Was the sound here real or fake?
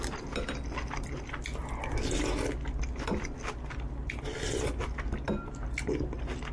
real